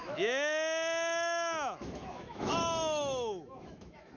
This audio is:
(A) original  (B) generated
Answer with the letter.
B